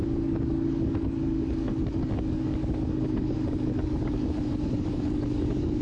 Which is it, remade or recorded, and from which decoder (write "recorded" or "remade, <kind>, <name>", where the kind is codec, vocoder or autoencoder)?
remade, codec, DAC